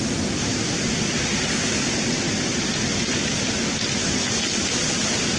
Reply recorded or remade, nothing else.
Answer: recorded